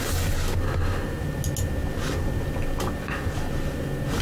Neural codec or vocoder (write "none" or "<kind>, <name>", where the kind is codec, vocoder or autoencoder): none